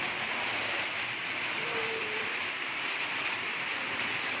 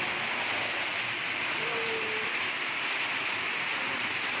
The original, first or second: second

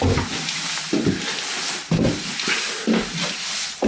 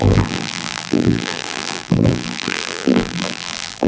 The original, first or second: first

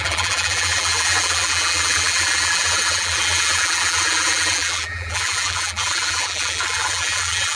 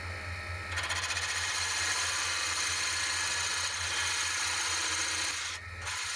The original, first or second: second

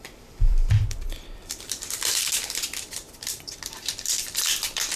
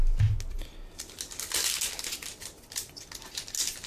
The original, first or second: second